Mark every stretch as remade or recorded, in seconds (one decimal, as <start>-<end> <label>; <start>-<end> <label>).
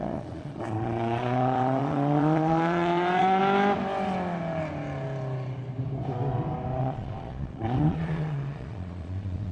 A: 0.0-3.4 remade; 3.4-6.8 recorded; 6.8-9.5 remade